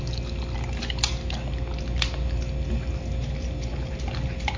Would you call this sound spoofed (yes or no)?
no